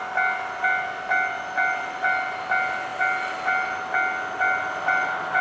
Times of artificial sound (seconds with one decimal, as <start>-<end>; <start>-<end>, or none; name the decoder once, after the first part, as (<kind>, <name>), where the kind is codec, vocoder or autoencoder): none